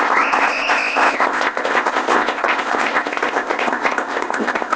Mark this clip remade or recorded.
remade